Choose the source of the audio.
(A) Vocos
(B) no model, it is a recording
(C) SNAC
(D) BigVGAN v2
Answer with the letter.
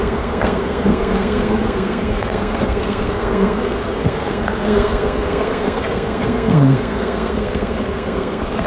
C